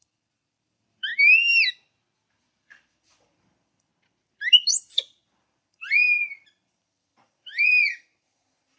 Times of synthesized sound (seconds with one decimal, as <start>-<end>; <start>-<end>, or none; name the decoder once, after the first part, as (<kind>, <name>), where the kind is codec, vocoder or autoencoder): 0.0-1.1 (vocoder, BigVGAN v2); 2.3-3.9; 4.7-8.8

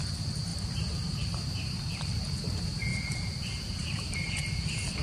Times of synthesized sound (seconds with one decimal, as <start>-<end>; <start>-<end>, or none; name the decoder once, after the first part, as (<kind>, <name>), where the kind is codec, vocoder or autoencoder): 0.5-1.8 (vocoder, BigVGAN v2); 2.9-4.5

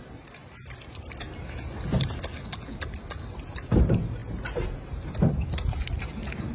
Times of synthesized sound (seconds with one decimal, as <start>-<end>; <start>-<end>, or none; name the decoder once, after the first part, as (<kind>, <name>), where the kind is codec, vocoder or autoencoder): 0.0-0.4 (vocoder, BigVGAN v2); 3.8-6.5

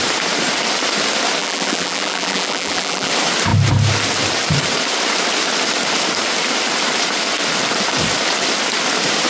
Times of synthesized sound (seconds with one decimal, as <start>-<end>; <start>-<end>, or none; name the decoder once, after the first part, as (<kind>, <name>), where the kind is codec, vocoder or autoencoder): 1.4-3.1 (vocoder, BigVGAN v2)

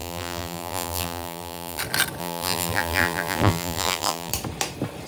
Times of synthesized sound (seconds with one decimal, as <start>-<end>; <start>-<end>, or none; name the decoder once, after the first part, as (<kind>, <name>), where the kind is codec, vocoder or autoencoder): 0.0-1.8 (vocoder, BigVGAN v2); 2.2-4.3

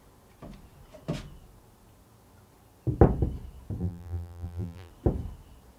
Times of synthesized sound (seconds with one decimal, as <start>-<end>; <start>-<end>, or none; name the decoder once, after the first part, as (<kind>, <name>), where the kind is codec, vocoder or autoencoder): 3.8-4.9 (vocoder, BigVGAN v2)